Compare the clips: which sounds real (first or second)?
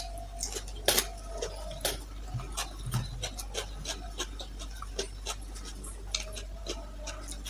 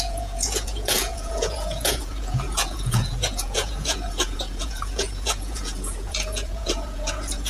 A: first